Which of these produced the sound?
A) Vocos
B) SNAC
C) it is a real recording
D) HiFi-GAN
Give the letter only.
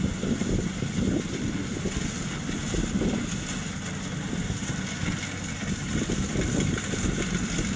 C